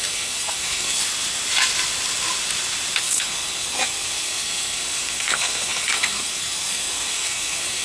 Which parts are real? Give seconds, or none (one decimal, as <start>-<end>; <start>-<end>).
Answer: 1.0-3.0